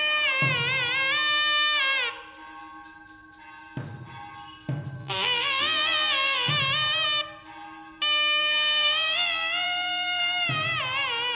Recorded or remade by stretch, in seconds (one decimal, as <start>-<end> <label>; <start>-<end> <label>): 0.0-5.0 recorded; 5.0-6.5 remade; 6.5-8.4 recorded; 8.4-10.2 remade; 10.2-11.3 recorded